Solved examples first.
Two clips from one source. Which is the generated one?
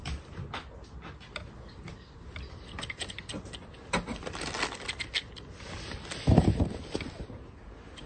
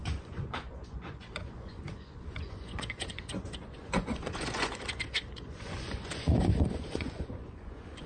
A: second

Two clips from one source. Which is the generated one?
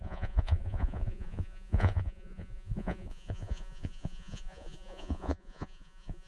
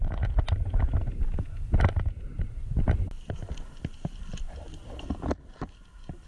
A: first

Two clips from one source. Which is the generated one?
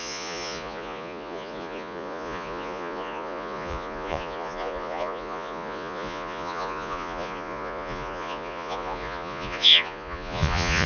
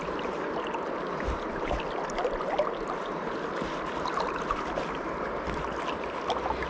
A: first